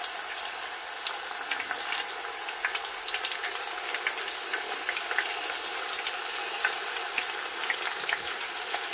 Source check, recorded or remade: recorded